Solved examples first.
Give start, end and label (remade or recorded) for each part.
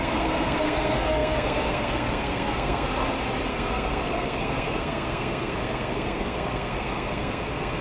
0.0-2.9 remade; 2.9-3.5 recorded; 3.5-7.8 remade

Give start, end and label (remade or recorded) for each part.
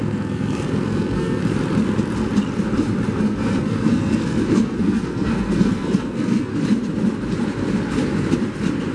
0.0-1.4 remade; 1.4-3.2 recorded; 3.2-6.5 remade; 6.5-8.9 recorded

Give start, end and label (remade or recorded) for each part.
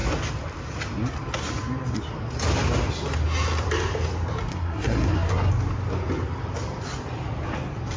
0.0-4.5 recorded; 4.5-5.5 remade; 5.5-8.0 recorded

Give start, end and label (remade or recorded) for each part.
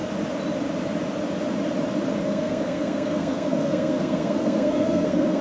0.0-2.2 recorded; 2.2-5.4 remade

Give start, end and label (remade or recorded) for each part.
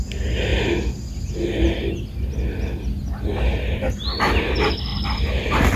0.0-5.8 recorded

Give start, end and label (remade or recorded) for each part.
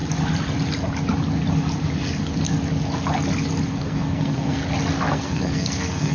0.0-3.7 recorded; 3.7-4.6 remade; 4.6-5.1 recorded; 5.1-6.1 remade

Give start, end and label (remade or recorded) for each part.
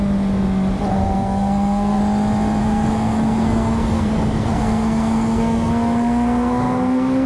0.0-0.9 recorded; 0.9-2.0 remade; 2.0-2.6 recorded; 2.6-7.3 remade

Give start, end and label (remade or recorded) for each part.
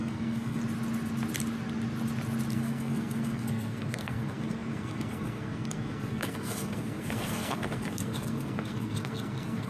0.0-0.6 remade; 0.6-2.5 recorded; 2.5-9.7 remade